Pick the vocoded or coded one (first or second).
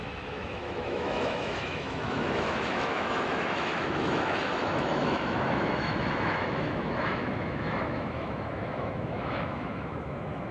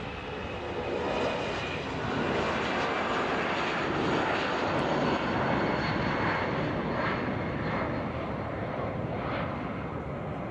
first